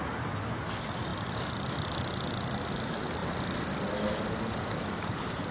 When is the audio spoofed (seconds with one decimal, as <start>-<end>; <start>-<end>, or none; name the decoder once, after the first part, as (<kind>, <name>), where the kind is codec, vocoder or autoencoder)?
none